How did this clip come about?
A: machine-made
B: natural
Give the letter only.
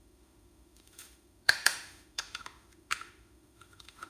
A